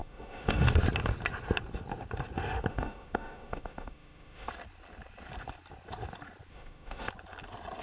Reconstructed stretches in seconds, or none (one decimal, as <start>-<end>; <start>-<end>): 0.0-0.7; 2.7-4.5; 6.5-7.1